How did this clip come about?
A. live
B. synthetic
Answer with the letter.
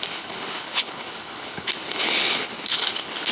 B